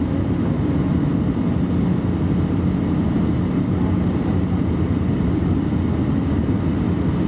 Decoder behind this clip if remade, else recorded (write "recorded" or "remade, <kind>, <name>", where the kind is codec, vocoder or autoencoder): recorded